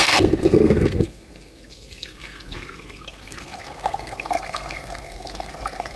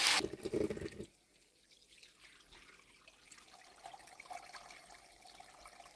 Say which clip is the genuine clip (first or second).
second